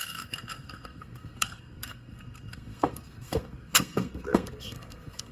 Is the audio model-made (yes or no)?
yes